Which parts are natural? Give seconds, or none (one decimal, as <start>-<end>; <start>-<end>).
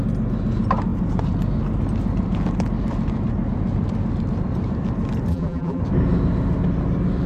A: 0.0-5.3; 5.8-7.3